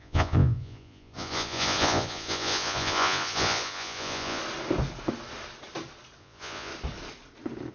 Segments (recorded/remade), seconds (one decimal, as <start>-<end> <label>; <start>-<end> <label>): 0.0-4.4 remade; 4.4-6.2 recorded; 6.2-6.7 remade; 6.7-7.7 recorded